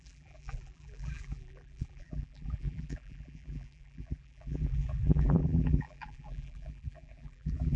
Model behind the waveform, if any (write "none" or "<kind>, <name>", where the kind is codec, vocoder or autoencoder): vocoder, BigVGAN v2